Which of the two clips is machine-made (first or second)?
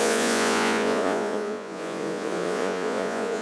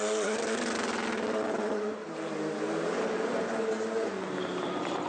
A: first